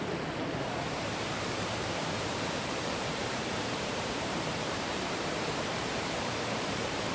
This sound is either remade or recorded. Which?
remade